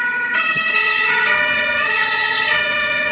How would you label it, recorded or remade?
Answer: remade